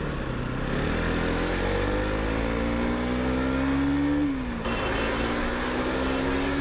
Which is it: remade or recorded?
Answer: recorded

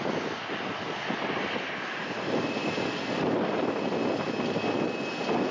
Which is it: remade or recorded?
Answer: recorded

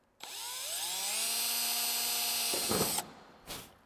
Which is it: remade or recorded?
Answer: recorded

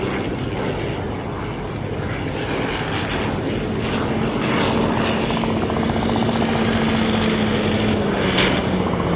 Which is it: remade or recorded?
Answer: recorded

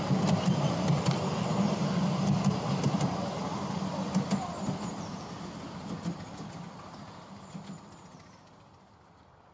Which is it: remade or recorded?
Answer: recorded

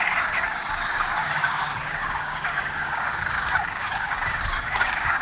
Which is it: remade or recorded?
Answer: remade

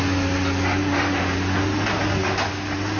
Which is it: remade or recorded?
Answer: recorded